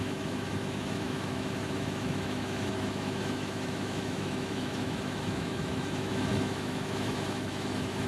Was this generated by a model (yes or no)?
yes